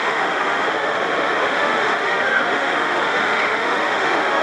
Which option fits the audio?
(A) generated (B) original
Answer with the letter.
A